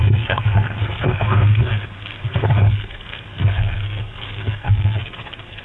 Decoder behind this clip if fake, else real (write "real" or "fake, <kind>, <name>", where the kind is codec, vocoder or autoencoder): fake, codec, SNAC